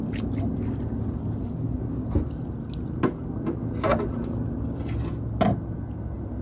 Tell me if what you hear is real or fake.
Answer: real